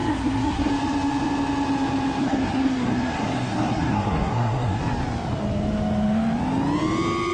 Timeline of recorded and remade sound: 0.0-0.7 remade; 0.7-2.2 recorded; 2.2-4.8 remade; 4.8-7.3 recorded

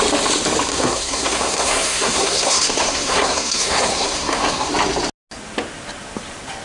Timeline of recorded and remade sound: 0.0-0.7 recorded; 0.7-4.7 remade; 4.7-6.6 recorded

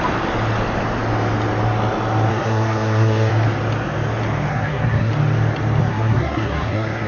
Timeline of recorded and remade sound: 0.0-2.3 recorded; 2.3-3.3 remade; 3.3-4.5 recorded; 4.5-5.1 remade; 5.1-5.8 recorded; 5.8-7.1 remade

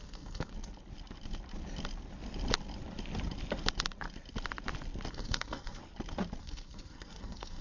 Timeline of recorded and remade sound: 0.0-0.5 remade; 0.5-5.1 recorded; 5.1-5.8 remade; 5.8-6.4 recorded; 6.4-7.6 remade